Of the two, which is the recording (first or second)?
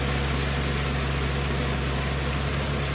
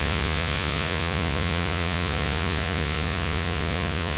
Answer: first